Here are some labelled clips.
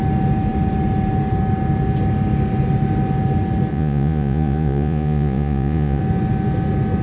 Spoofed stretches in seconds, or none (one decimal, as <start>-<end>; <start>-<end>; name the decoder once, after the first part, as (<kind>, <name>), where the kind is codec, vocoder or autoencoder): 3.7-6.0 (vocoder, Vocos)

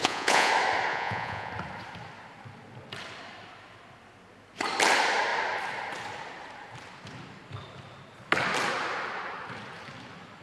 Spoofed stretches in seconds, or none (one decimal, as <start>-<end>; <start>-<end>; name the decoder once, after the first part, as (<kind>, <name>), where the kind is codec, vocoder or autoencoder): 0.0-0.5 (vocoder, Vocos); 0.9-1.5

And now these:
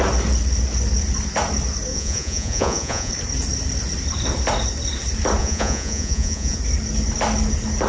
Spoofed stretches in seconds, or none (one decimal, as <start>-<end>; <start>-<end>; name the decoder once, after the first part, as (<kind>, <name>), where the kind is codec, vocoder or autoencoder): 1.9-3.1 (vocoder, Vocos); 5.4-6.6